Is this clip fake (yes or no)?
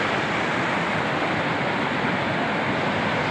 no